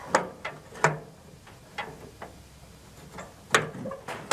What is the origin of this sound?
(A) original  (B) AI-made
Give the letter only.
A